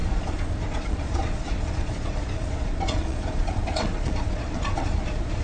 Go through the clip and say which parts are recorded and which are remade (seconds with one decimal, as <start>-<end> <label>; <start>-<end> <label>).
0.0-5.4 remade